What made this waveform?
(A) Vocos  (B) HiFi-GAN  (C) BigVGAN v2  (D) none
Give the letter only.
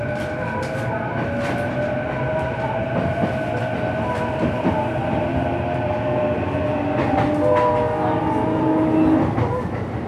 D